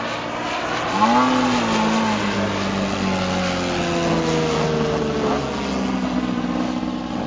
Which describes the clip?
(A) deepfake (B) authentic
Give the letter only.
B